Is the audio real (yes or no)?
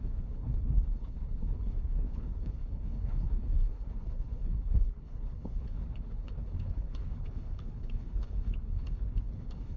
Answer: no